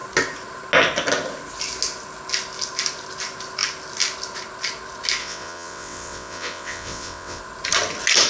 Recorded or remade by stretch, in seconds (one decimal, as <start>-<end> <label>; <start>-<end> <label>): 0.0-5.2 recorded; 5.2-7.4 remade; 7.4-8.3 recorded